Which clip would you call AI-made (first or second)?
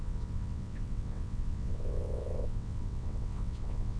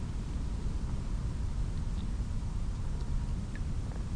first